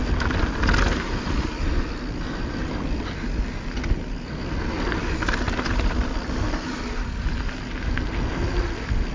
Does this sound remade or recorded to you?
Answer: recorded